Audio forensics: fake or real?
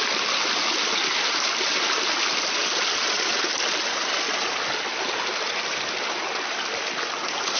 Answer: real